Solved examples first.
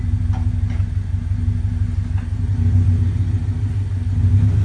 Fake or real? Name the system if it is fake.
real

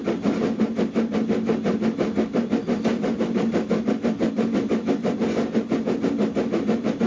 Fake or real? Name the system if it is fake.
real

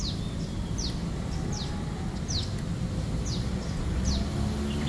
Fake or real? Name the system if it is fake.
real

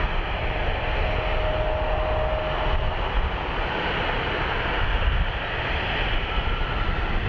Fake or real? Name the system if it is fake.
real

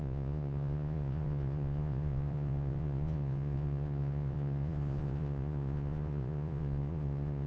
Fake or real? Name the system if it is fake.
fake, vocoder, Vocos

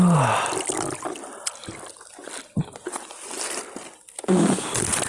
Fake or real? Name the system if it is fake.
real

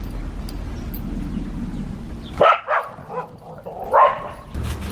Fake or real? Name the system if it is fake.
real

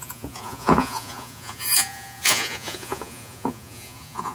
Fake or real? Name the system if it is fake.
fake, vocoder, Vocos